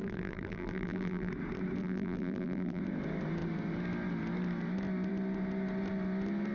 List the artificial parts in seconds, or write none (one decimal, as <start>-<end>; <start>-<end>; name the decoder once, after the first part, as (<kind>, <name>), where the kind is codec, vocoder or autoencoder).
0.0-1.3 (vocoder, BigVGAN v2); 1.8-2.8